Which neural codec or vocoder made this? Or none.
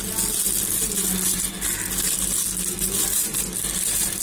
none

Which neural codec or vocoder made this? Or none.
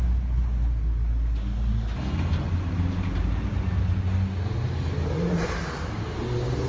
none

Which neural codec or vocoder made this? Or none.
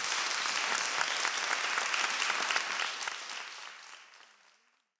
none